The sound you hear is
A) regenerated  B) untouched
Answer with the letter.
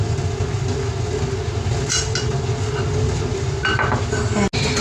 B